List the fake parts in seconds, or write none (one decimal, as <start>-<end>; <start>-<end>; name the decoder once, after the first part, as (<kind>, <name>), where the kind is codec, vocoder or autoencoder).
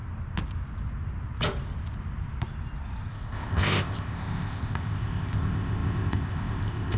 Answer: 3.1-7.0 (codec, ZipCodec)